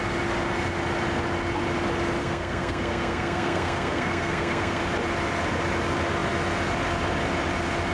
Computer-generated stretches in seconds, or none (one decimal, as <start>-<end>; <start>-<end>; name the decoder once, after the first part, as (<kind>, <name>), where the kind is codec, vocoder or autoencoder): 2.2-4.8 (codec, SNAC)